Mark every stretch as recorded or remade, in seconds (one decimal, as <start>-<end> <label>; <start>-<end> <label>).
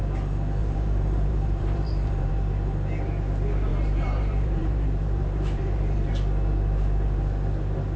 0.0-0.6 recorded; 0.6-2.3 remade; 2.3-3.7 recorded; 3.7-6.1 remade; 6.1-8.0 recorded